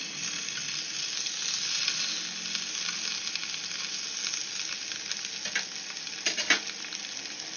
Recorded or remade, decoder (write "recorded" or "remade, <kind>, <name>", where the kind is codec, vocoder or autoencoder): recorded